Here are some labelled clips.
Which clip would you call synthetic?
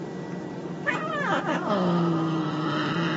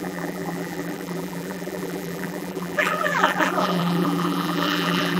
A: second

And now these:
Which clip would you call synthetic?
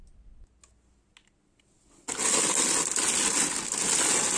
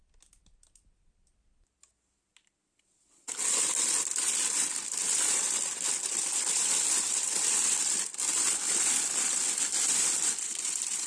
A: second